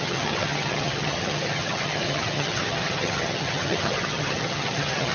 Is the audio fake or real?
fake